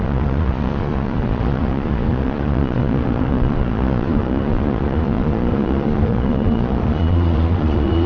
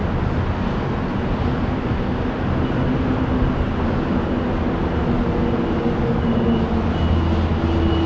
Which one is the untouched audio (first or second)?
second